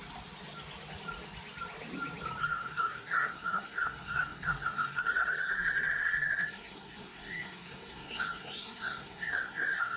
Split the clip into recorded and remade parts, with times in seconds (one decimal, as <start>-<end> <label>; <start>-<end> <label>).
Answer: 0.0-2.4 recorded; 2.4-10.0 remade